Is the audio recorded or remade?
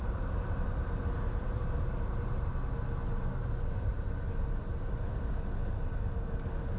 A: recorded